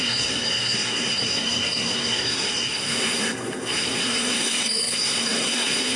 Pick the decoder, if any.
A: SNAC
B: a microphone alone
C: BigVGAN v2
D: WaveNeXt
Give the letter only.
A